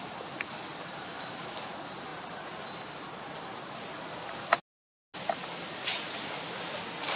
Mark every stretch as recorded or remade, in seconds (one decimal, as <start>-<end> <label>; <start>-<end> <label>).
0.0-7.2 recorded